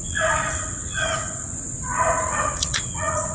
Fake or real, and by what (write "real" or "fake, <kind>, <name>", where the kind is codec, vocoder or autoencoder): fake, vocoder, Vocos